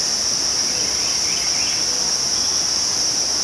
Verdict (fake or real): real